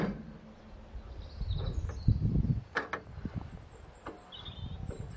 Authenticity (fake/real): real